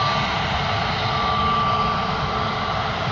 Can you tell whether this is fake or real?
real